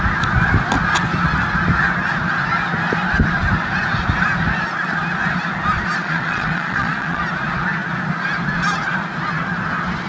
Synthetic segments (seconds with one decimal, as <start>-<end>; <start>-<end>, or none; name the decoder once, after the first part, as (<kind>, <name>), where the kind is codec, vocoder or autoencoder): 6.0-7.2 (vocoder, Vocos)